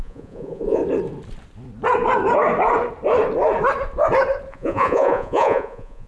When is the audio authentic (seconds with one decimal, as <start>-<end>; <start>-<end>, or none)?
0.8-4.5